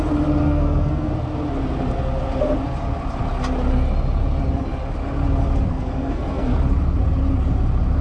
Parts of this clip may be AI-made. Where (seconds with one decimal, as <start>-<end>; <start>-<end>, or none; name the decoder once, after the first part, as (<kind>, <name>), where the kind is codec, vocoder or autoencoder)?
0.4-1.1 (codec, SNAC); 5.7-6.5